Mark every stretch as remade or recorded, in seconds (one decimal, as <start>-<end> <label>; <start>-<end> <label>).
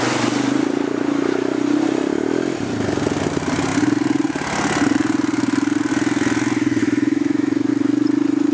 0.0-6.8 recorded; 6.8-7.7 remade; 7.7-8.5 recorded